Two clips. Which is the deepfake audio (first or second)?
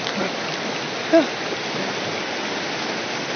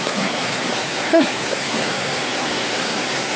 second